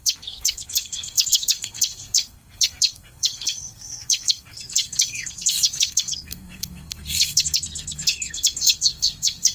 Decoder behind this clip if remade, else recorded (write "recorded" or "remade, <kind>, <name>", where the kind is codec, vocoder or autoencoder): remade, codec, SNAC